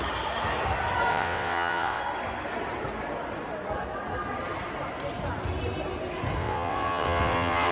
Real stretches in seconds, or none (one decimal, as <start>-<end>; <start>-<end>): 0.0-1.1; 2.0-6.4